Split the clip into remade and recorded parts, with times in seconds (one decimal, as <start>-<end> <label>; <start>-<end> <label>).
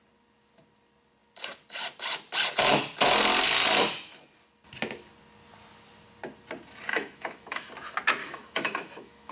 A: 0.0-6.9 recorded; 6.9-7.7 remade; 7.7-8.2 recorded; 8.2-9.3 remade